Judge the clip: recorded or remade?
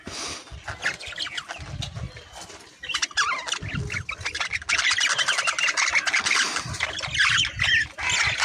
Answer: recorded